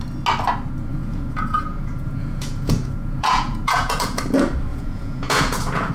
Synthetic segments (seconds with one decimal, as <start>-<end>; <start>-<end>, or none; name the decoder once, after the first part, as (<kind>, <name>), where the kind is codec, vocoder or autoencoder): 0.9-4.2 (vocoder, Vocos); 4.7-5.9